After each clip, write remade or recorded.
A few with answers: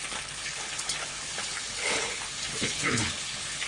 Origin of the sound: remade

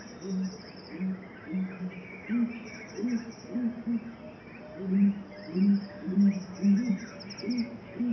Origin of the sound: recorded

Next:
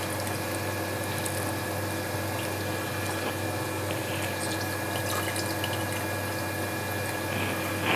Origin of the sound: recorded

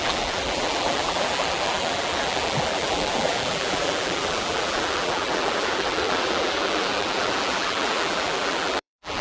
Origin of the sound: remade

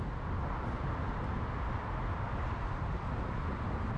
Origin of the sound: recorded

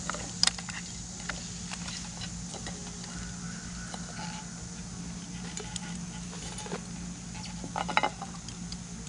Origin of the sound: recorded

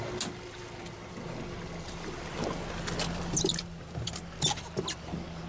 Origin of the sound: recorded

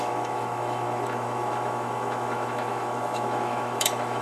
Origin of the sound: remade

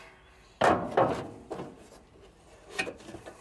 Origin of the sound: recorded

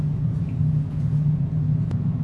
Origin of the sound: remade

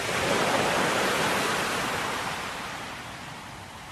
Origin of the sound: recorded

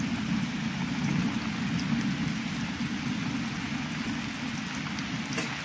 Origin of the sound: recorded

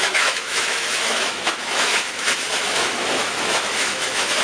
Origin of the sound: remade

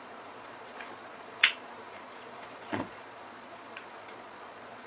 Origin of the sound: remade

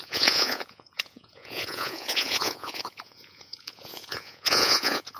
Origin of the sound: remade